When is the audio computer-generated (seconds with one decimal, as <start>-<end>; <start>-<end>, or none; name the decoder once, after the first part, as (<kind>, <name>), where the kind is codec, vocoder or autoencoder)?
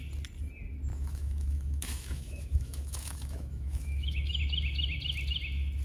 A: 0.9-4.4 (autoencoder, DAC-VAE)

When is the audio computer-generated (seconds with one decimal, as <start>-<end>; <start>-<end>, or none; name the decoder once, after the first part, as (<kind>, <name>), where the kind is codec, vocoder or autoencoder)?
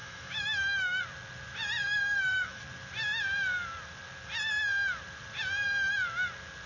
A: 0.0-1.0 (autoencoder, DAC-VAE); 1.8-2.6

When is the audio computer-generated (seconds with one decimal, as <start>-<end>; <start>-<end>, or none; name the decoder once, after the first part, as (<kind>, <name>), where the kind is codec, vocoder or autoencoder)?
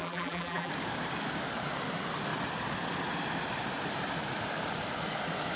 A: 0.0-0.7 (vocoder, BigVGAN v2)